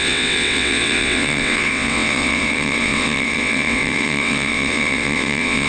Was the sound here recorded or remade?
remade